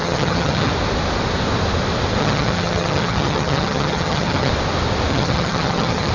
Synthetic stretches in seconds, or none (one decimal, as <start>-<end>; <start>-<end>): 0.0-0.7; 2.2-4.5; 5.1-6.1